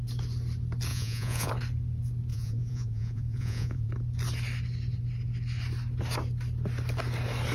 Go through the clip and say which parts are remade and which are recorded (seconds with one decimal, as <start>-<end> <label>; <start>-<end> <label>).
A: 0.0-0.9 recorded; 0.9-1.5 remade; 1.5-2.3 recorded; 2.3-3.9 remade; 3.9-7.5 recorded